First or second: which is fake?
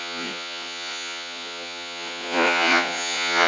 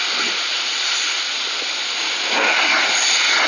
first